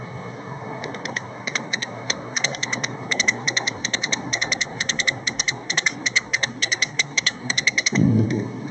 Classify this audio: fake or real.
fake